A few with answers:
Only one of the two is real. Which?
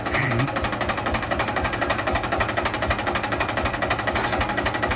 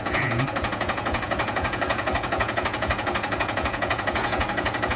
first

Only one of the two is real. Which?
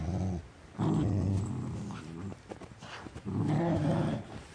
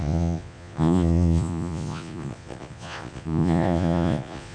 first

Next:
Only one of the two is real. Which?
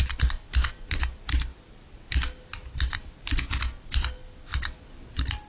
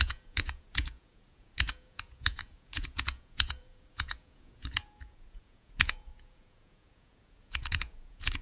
first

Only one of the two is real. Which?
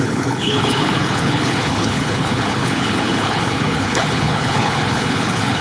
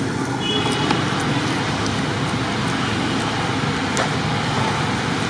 second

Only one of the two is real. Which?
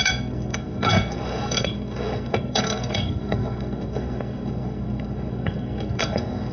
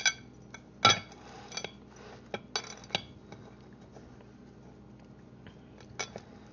second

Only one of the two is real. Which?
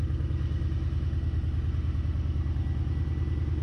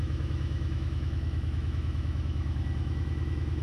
first